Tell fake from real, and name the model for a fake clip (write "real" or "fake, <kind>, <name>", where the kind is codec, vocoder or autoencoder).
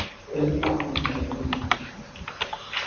real